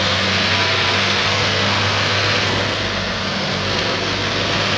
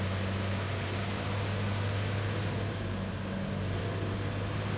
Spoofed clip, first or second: first